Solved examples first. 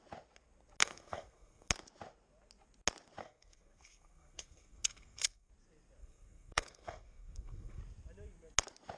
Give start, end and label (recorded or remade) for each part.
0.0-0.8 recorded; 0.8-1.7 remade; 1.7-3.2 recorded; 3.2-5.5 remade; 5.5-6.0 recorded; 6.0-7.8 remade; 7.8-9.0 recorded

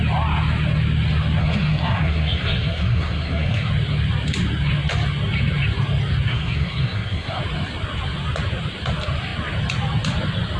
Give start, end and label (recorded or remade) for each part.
0.0-1.4 recorded; 1.4-3.7 remade; 3.7-6.3 recorded; 6.3-7.4 remade; 7.4-10.6 recorded

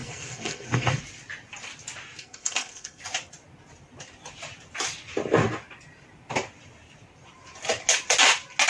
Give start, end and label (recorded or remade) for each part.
0.0-1.0 remade; 1.0-2.2 recorded; 2.2-3.0 remade; 3.0-8.7 recorded

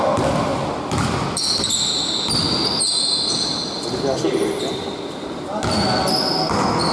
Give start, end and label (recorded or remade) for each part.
0.0-6.9 recorded

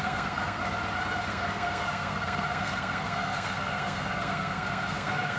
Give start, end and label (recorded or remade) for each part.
0.0-0.6 remade; 0.6-1.3 recorded; 1.3-5.4 remade